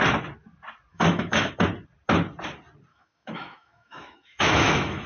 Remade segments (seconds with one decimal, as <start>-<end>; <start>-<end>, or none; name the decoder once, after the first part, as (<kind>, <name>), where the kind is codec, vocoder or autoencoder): 0.9-1.5 (autoencoder, DAC-VAE); 2.9-5.1